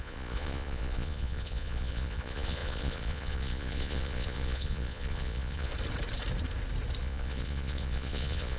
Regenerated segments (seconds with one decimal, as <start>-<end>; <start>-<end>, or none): 0.0-5.7; 7.0-8.6